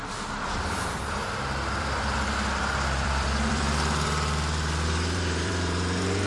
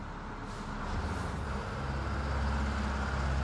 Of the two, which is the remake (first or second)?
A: first